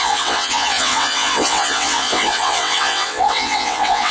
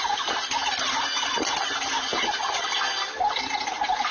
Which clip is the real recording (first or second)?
second